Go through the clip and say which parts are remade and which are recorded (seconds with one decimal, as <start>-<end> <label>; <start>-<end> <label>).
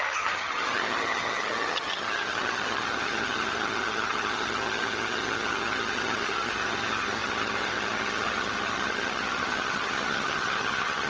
0.0-11.1 remade